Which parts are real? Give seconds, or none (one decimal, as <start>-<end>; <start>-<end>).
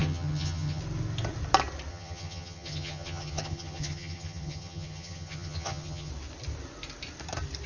0.8-1.9; 6.1-7.7